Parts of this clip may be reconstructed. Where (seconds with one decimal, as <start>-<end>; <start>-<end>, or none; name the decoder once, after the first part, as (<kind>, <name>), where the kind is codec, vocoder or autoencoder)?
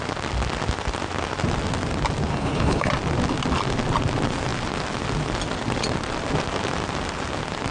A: 2.3-2.9 (codec, HILCodec)